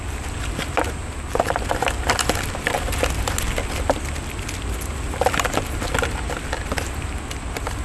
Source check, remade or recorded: recorded